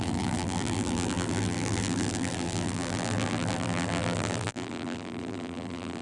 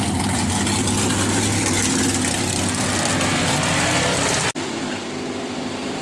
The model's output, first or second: first